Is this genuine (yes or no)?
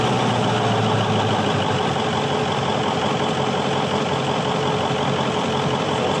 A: yes